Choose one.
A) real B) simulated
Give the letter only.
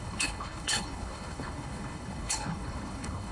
B